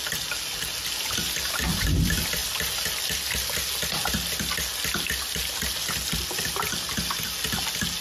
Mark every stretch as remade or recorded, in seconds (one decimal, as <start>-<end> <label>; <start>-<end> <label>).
0.0-8.0 recorded